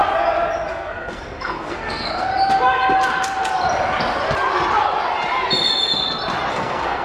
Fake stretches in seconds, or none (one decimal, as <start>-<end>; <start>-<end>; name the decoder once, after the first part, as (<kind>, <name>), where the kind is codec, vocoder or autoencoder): 0.7-2.3 (codec, SNAC); 6.5-7.0